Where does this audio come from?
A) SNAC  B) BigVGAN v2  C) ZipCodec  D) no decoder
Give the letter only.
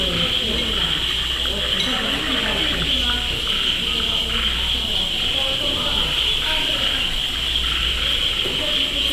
D